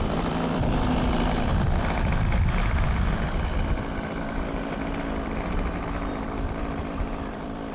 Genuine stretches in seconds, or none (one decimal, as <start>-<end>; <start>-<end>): 1.5-6.1